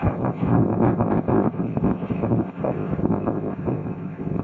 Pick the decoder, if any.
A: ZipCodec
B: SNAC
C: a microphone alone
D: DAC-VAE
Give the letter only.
A